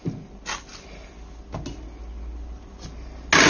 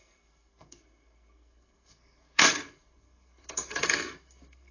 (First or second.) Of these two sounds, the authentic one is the first